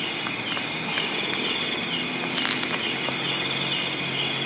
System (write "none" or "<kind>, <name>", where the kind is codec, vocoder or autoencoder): none